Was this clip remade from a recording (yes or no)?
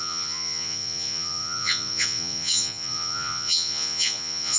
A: yes